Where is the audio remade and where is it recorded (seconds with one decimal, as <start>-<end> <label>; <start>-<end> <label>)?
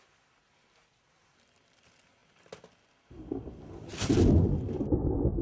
0.0-5.4 recorded